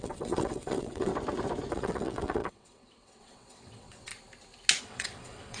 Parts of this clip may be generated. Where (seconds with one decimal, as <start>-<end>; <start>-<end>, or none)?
0.0-1.1; 1.7-4.1; 4.8-5.6